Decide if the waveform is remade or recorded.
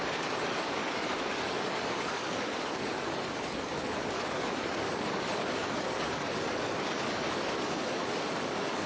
remade